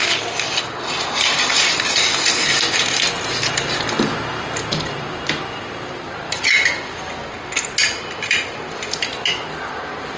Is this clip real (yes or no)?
yes